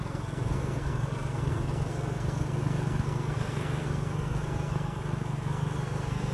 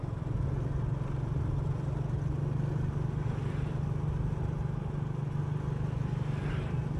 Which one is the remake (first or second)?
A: first